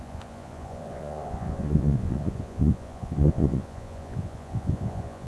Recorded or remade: remade